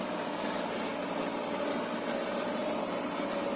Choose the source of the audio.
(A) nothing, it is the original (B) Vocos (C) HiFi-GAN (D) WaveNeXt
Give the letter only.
A